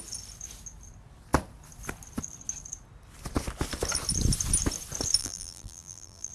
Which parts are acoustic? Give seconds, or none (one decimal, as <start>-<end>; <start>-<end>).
0.0-5.2